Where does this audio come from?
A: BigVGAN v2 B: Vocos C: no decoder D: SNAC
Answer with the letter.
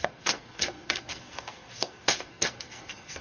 D